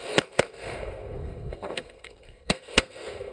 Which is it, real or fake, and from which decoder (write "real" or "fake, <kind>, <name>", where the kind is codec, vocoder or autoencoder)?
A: fake, codec, SNAC